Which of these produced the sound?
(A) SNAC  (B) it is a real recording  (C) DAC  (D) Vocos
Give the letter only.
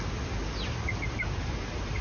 B